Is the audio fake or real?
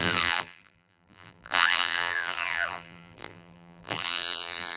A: fake